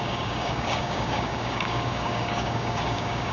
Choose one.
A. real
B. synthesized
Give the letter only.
B